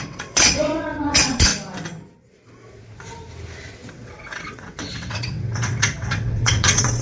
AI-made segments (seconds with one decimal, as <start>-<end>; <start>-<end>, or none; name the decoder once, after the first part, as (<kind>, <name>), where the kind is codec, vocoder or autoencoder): 0.0-1.5 (vocoder, WaveNeXt); 3.9-7.0